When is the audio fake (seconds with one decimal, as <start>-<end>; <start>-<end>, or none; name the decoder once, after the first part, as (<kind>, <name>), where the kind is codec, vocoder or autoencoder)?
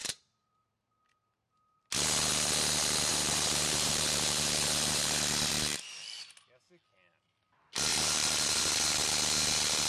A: 0.0-0.7 (vocoder, BigVGAN v2); 3.1-5.5; 7.9-8.6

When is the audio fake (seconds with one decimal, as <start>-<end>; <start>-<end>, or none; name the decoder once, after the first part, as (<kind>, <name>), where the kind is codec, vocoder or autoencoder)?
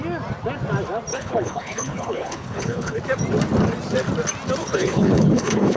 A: 1.1-3.0 (codec, HILCodec); 4.6-5.8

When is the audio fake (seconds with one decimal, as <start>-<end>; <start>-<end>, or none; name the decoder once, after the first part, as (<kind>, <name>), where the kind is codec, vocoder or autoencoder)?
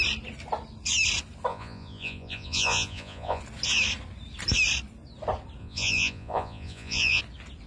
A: 1.5-3.4 (vocoder, Vocos); 5.6-7.2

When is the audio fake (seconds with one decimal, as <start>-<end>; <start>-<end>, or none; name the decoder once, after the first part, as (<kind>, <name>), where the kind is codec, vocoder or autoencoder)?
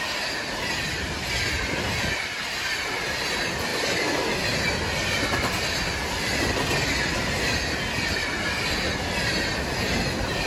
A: none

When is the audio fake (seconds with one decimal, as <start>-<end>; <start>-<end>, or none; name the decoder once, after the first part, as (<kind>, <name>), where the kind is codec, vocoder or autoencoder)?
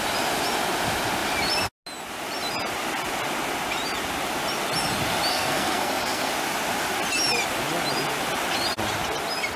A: 5.3-6.3 (codec, SNAC)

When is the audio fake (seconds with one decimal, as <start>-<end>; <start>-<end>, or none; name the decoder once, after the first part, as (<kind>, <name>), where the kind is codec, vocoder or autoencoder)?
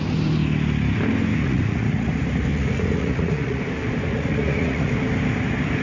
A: 1.4-2.1 (vocoder, Vocos); 2.5-3.6; 4.1-4.9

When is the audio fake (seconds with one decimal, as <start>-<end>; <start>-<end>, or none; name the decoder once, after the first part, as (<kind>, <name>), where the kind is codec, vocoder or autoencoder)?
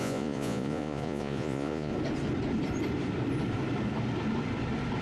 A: 0.0-1.9 (vocoder, Vocos)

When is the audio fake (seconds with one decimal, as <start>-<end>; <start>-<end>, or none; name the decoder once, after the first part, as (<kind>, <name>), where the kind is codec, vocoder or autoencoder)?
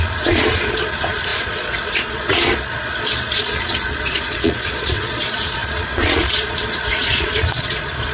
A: 0.0-8.1 (vocoder, Vocos)